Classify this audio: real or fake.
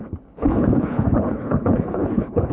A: fake